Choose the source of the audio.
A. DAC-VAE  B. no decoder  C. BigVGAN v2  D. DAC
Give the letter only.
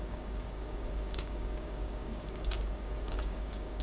D